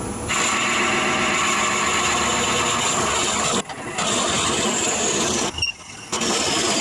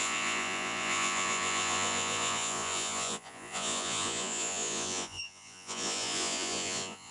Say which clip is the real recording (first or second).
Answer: first